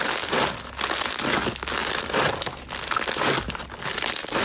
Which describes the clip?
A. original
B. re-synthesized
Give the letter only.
A